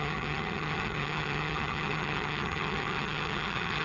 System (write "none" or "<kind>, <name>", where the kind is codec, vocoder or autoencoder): vocoder, HiFi-GAN